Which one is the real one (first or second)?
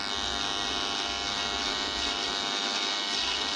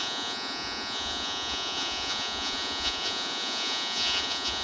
first